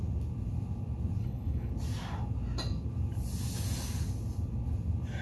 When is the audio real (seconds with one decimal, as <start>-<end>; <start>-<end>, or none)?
0.0-1.2; 1.7-5.2